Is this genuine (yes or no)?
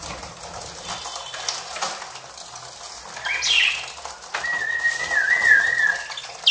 yes